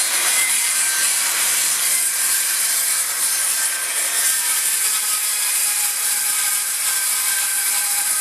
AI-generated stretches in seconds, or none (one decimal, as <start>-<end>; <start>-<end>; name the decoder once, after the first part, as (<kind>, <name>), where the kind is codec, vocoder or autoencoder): 0.0-8.2 (vocoder, BigVGAN v2)